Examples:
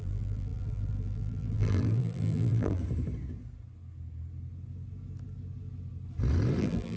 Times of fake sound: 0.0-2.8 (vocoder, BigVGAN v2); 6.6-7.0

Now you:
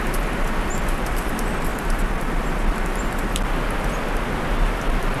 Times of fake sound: none

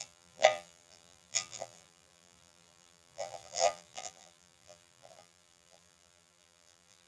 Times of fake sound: 0.0-7.1 (vocoder, BigVGAN v2)